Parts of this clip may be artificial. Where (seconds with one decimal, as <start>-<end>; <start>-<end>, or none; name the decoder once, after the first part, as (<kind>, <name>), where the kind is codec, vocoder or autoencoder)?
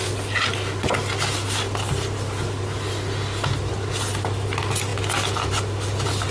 none